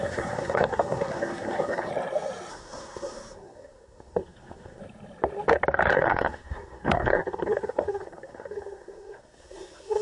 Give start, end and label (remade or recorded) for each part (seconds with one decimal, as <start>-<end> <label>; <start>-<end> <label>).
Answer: 0.0-1.9 remade; 1.9-2.5 recorded; 2.5-4.8 remade; 4.8-5.9 recorded; 5.9-10.0 remade